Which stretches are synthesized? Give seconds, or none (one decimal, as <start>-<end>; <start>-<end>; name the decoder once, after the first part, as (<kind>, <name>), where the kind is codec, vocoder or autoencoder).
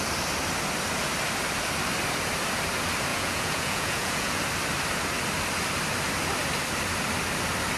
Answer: 3.1-4.4 (vocoder, Vocos)